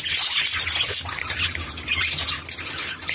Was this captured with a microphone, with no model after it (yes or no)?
yes